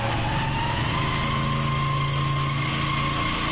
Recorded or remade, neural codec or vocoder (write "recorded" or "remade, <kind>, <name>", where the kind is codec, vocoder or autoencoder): recorded